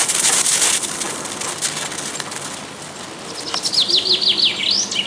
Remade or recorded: recorded